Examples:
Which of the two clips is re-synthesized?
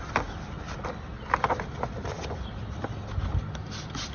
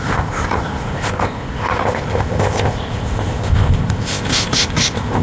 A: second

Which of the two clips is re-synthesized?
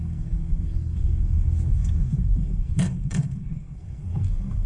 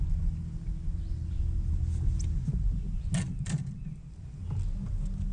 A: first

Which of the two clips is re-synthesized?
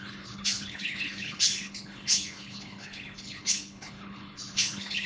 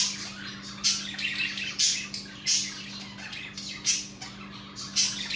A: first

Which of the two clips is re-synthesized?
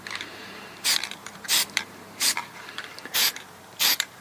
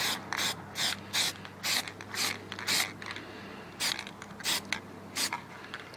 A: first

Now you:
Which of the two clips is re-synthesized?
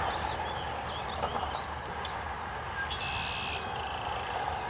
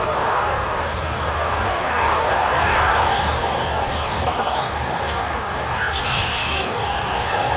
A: second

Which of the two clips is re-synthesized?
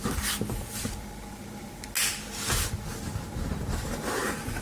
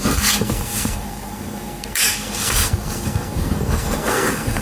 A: second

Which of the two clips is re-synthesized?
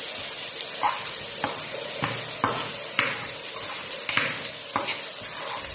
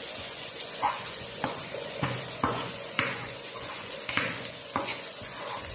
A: second